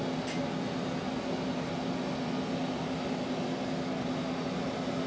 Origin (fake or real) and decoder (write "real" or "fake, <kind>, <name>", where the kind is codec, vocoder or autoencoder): real